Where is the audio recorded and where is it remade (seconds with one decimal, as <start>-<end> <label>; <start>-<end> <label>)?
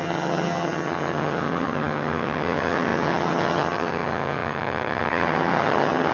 0.0-6.1 remade